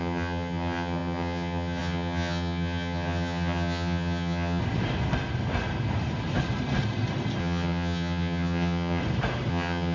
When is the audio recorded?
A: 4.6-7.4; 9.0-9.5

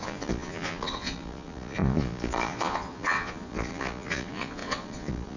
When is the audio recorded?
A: none

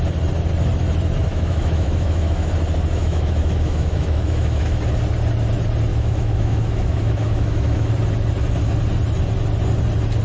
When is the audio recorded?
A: 0.0-1.3; 2.5-3.0; 4.8-5.9; 7.9-10.2

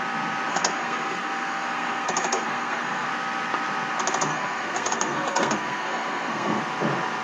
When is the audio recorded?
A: 0.0-0.5; 3.1-4.3; 6.6-7.2

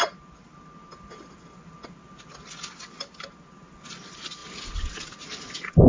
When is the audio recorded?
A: 0.0-5.9

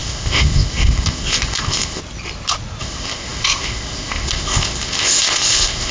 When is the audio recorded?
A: 2.0-2.8